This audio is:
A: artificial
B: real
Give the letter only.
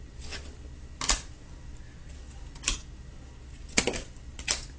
B